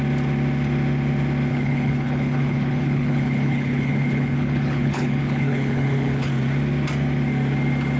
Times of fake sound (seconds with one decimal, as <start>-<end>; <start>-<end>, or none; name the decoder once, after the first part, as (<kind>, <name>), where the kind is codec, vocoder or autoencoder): 1.5-6.3 (codec, HILCodec)